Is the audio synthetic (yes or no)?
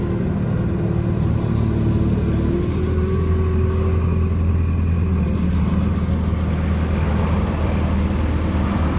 no